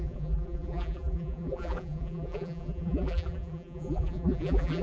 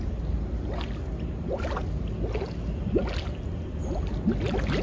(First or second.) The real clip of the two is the second